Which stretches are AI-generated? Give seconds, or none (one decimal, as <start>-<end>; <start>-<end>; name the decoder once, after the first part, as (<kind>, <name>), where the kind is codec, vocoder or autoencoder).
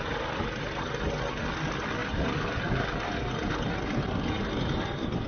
none